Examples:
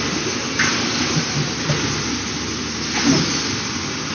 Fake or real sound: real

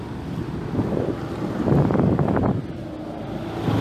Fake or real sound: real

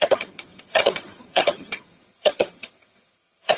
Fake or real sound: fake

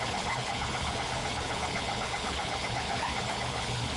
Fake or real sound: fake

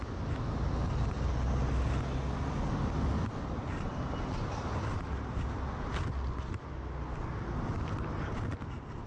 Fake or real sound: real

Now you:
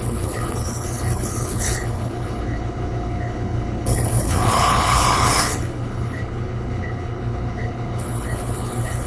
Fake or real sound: fake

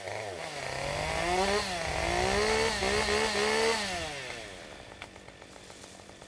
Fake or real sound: real